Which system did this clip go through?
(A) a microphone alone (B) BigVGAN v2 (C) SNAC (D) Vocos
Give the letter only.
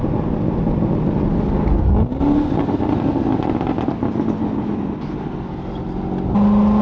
A